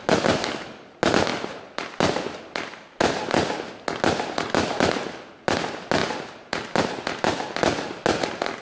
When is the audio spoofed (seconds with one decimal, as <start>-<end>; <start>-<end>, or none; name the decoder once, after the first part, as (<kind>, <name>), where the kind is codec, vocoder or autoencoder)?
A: 0.4-0.9 (codec, DAC)